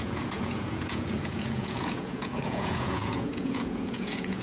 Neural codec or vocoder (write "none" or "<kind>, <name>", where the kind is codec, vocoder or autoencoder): vocoder, Vocos